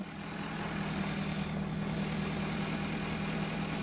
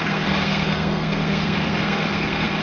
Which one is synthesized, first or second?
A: second